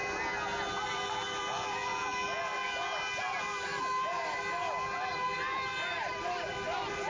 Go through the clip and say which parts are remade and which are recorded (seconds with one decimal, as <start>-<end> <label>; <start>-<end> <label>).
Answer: 0.0-0.8 recorded; 0.8-1.9 remade; 1.9-6.2 recorded; 6.2-7.1 remade